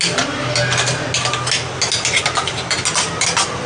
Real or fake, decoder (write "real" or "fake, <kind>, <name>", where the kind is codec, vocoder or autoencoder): real